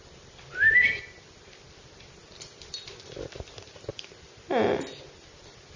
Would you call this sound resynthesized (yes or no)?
no